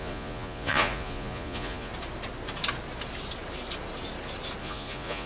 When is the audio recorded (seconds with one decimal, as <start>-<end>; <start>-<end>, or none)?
1.9-4.6